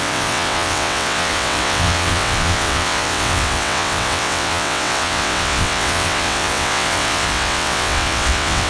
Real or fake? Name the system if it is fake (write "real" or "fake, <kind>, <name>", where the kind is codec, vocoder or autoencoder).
fake, vocoder, WaveNeXt